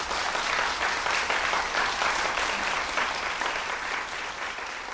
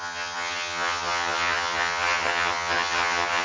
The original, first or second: first